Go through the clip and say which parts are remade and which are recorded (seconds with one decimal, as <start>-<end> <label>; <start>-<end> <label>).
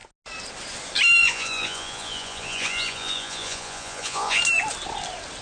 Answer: 0.0-1.2 recorded; 1.2-4.4 remade; 4.4-5.4 recorded